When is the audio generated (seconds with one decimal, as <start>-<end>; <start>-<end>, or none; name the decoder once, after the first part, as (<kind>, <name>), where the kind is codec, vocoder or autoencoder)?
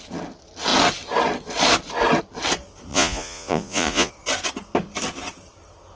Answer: 2.9-4.1 (vocoder, Vocos)